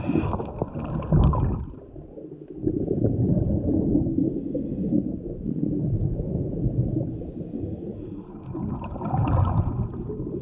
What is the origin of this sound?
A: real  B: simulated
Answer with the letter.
A